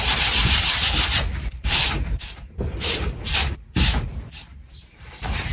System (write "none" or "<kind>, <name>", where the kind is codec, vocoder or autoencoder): vocoder, BigVGAN v2